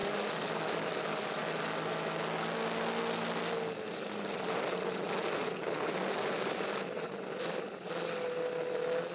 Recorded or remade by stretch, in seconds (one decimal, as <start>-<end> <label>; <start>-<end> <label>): 0.0-9.1 recorded